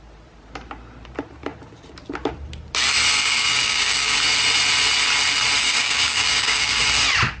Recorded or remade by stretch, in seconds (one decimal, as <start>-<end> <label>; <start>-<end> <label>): 0.0-3.2 recorded; 3.2-4.2 remade; 4.2-5.6 recorded; 5.6-6.8 remade; 6.8-7.4 recorded